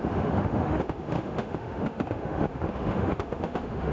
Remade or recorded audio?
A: remade